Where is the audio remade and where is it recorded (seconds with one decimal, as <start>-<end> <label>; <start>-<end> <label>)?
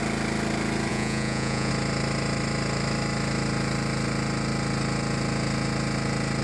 0.0-0.9 recorded; 0.9-1.7 remade; 1.7-6.4 recorded